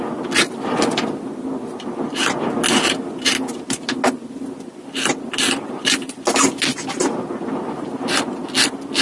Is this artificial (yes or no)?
no